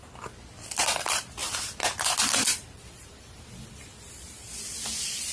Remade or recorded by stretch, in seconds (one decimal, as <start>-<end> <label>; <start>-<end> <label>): 0.0-5.3 recorded